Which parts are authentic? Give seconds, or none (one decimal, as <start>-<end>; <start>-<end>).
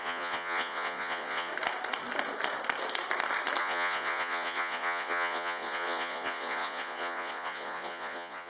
1.5-3.6